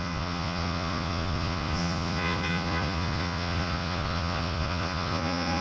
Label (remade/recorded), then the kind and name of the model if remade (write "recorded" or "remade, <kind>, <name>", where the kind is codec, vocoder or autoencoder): remade, vocoder, Vocos